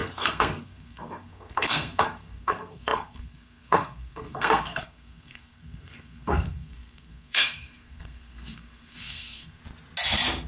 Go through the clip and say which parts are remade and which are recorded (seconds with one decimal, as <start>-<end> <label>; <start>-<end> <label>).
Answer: 0.0-9.6 remade; 9.6-10.5 recorded